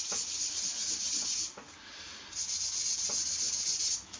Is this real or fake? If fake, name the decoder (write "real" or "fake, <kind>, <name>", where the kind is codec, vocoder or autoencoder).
real